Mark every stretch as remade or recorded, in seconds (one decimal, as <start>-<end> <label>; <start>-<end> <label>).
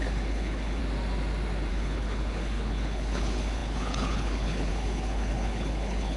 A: 0.0-0.8 remade; 0.8-1.7 recorded; 1.7-6.2 remade